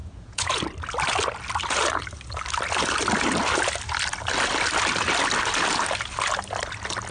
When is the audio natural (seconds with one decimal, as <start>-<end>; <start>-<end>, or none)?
0.6-7.1